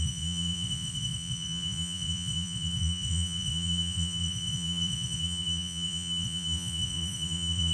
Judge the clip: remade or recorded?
remade